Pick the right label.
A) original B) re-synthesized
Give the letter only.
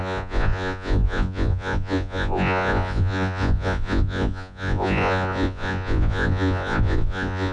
B